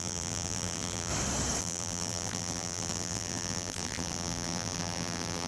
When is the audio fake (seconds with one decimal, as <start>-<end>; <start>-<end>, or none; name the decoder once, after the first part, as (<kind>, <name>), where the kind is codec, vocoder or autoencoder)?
0.0-1.1 (vocoder, BigVGAN v2); 1.6-5.5